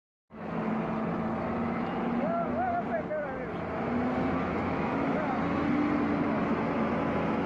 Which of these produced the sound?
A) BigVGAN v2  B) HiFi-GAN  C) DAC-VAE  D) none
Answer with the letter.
D